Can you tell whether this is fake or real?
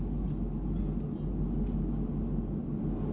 real